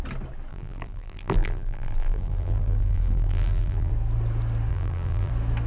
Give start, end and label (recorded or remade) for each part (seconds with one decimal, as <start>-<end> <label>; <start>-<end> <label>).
0.0-0.5 recorded; 0.5-3.9 remade; 3.9-4.7 recorded; 4.7-5.3 remade; 5.3-5.7 recorded